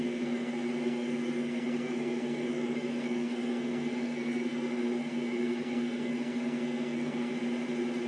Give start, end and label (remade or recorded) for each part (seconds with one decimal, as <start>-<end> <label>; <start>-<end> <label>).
0.0-7.3 remade; 7.3-8.1 recorded